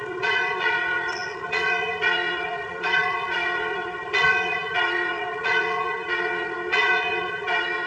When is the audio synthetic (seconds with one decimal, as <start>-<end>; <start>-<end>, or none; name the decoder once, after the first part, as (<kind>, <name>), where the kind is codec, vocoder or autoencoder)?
0.0-7.9 (vocoder, Vocos)